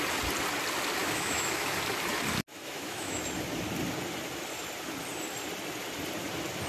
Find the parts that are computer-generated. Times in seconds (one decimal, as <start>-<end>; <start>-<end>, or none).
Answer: 1.0-1.7; 2.5-3.2